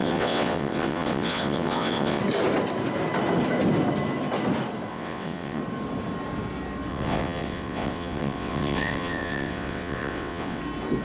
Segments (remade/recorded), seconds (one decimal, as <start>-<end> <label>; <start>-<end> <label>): 0.0-2.2 remade; 2.2-4.9 recorded; 4.9-5.6 remade; 5.6-6.9 recorded; 6.9-10.6 remade; 10.6-11.0 recorded